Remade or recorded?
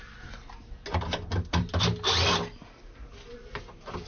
recorded